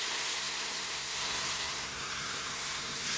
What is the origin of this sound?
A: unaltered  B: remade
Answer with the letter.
B